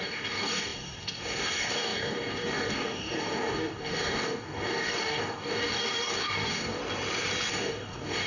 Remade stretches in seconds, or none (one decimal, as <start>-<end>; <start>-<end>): 0.0-6.8; 7.5-8.3